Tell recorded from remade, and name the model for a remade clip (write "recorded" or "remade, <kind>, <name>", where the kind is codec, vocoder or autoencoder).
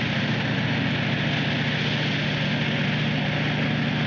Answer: recorded